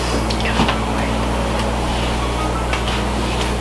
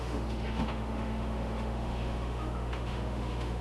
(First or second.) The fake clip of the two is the second